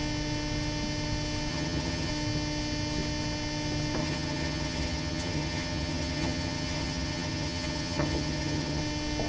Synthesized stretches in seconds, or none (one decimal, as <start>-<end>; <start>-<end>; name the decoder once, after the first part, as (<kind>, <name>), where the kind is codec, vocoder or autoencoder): 1.5-2.1 (vocoder, HiFi-GAN); 4.0-8.8